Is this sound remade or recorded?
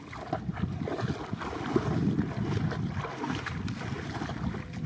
recorded